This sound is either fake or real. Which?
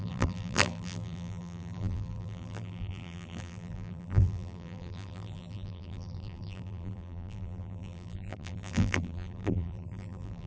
fake